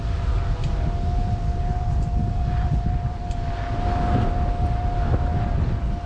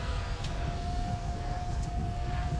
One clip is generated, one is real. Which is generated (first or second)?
second